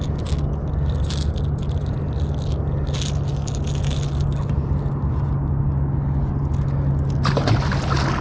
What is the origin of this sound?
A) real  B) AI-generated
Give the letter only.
A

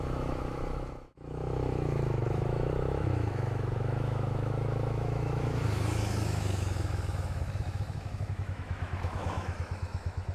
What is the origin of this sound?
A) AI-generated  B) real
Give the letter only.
A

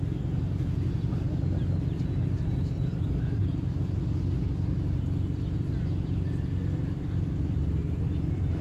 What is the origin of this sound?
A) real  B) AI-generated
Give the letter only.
A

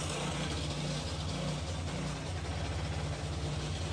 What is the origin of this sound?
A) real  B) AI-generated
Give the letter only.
A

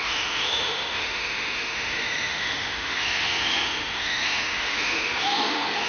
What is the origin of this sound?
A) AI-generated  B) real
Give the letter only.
A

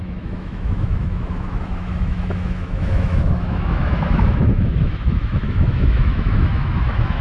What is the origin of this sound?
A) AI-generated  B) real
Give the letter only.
A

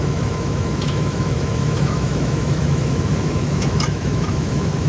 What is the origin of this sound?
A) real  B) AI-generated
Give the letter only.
B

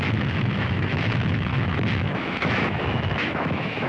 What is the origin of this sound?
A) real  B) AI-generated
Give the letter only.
B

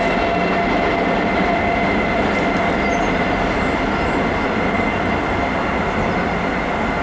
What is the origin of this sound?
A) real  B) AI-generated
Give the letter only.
A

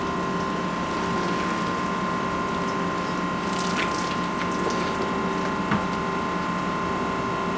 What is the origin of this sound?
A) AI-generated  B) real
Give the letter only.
B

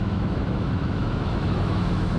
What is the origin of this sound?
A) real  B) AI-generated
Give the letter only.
B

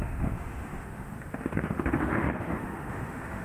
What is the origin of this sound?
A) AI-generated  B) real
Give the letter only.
A